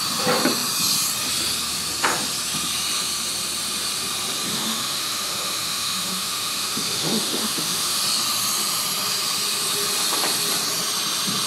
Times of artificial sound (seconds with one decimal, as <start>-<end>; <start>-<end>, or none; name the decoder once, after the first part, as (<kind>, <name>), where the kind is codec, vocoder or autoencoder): 4.5-8.0 (autoencoder, DAC-VAE)